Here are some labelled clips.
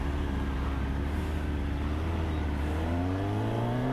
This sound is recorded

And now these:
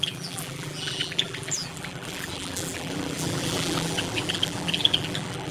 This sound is remade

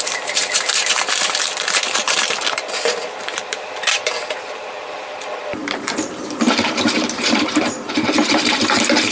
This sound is remade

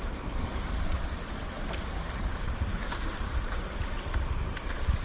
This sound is remade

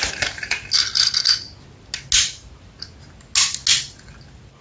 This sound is recorded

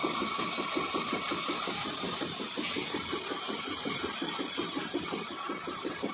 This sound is remade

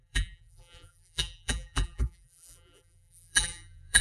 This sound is remade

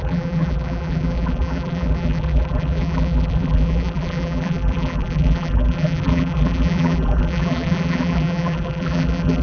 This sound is remade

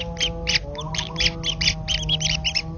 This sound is recorded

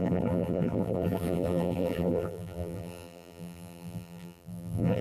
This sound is remade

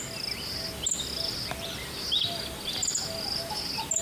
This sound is recorded